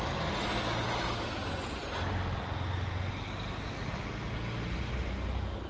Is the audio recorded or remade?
recorded